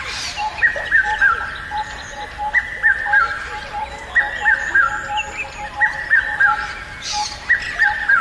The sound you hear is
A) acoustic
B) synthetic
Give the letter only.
A